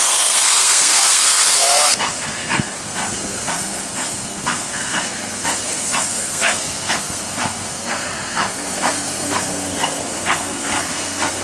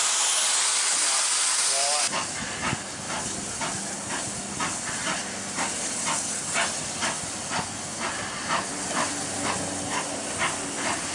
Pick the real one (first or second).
second